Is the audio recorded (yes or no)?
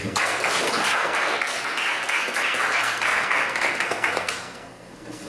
no